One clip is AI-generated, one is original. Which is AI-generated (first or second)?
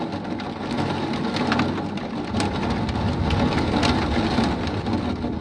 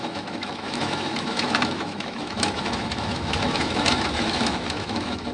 second